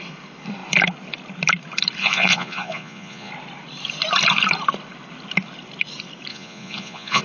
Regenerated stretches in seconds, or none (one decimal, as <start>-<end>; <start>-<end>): 2.0-3.3; 6.3-7.2

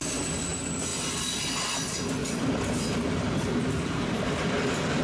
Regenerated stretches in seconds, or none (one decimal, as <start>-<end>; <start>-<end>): 2.2-5.0

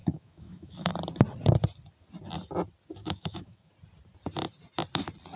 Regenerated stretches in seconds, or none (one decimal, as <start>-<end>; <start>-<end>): 0.0-0.9; 3.0-3.7

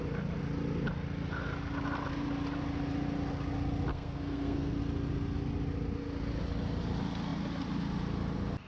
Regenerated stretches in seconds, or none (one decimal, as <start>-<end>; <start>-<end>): 3.9-4.8

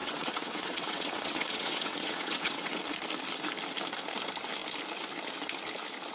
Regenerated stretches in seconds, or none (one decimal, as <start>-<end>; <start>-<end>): 0.0-2.8